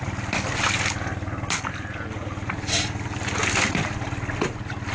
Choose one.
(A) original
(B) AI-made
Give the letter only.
A